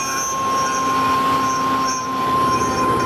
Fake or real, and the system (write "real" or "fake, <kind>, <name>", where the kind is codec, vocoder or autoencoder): real